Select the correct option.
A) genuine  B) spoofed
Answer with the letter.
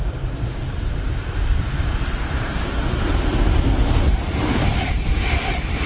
B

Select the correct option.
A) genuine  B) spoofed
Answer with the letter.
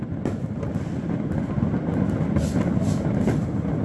A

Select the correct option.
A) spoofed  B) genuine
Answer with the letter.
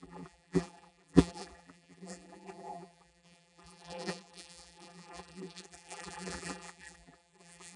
A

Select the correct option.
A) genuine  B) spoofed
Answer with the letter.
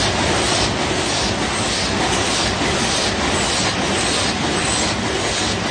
A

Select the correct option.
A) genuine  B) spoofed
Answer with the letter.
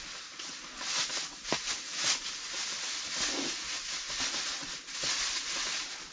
A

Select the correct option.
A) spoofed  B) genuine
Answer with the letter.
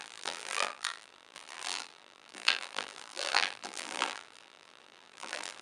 A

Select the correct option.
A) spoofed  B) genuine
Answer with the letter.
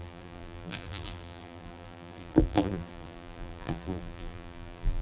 A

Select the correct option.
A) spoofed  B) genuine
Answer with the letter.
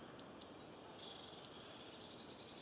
B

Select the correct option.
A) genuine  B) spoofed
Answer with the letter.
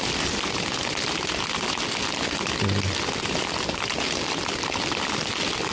A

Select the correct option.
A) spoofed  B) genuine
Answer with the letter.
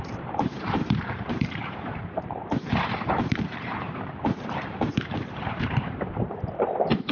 A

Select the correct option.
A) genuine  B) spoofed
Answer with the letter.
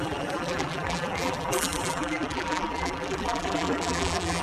B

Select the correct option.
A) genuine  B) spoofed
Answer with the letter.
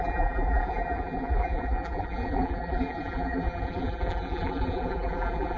B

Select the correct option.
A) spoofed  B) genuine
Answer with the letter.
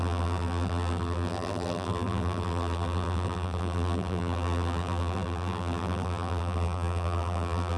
A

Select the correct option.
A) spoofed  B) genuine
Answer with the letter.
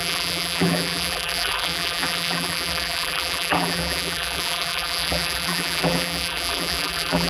A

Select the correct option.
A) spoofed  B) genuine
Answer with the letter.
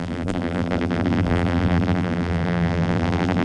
A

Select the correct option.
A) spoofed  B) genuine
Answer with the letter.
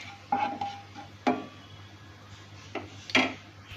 B